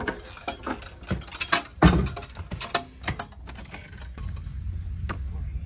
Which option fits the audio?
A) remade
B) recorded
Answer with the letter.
B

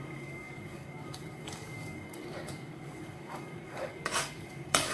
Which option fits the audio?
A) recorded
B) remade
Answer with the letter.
B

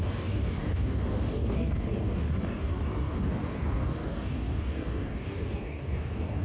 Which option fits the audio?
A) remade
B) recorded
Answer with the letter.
A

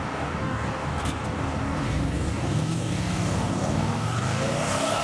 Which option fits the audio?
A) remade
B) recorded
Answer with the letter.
A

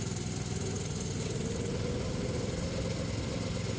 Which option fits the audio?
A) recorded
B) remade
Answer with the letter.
A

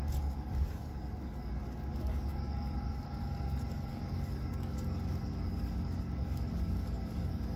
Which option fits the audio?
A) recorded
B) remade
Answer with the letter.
B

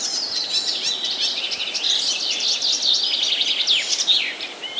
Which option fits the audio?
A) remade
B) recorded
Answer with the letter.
B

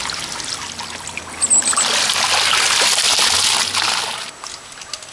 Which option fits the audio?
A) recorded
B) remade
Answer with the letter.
A